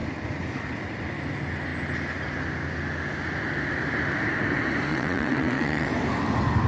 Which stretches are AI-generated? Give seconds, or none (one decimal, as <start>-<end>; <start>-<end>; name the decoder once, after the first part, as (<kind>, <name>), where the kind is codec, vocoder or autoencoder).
4.9-5.9 (vocoder, WaveNeXt)